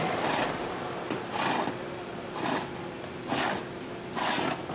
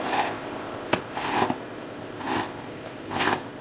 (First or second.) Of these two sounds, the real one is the first